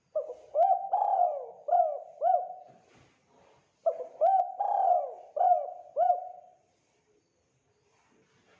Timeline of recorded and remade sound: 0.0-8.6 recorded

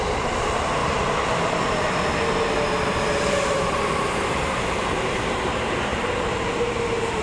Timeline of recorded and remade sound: 0.0-0.8 remade; 0.8-3.2 recorded; 3.2-7.2 remade

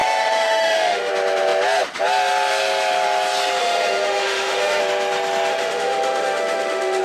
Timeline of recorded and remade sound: 0.0-1.1 remade; 1.1-3.6 recorded; 3.6-4.8 remade; 4.8-5.5 recorded; 5.5-7.0 remade

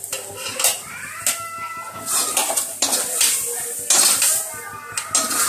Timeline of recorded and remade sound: 0.0-5.5 recorded

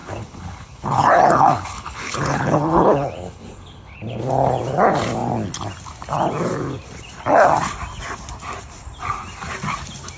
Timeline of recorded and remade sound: 0.0-4.3 remade; 4.3-10.2 recorded

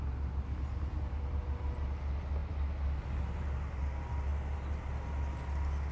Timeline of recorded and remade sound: 0.0-5.9 recorded

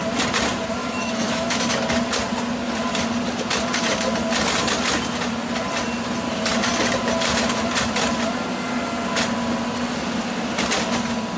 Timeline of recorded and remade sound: 0.0-0.8 recorded; 0.8-1.6 remade; 1.6-11.4 recorded

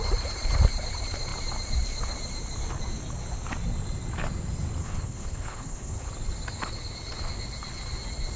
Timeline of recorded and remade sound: 0.0-4.8 recorded; 4.8-6.1 remade; 6.1-8.4 recorded